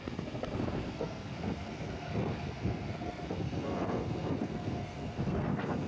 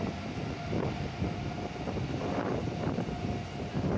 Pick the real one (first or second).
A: second